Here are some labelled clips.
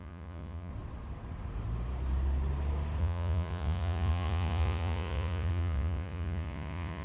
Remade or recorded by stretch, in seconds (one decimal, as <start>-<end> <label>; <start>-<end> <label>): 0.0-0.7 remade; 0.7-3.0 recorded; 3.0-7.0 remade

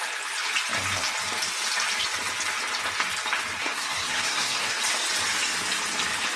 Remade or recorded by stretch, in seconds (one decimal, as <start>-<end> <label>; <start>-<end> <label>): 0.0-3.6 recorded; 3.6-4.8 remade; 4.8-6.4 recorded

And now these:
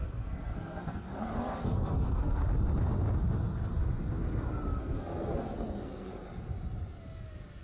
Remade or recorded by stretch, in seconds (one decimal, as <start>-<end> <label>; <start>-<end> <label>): 0.0-2.4 remade; 2.4-4.8 recorded; 4.8-6.2 remade; 6.2-7.6 recorded